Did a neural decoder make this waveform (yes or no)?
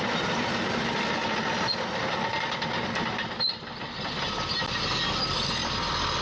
no